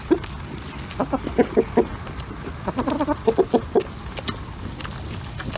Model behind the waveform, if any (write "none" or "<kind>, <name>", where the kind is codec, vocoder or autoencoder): none